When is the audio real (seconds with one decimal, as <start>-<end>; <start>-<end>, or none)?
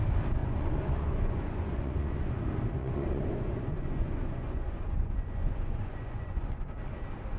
0.0-0.4; 2.4-2.8; 6.6-7.4